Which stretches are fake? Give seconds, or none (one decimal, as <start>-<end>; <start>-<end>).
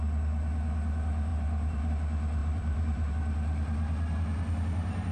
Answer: 1.3-1.9; 2.4-3.1